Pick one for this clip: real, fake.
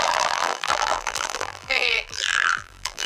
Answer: fake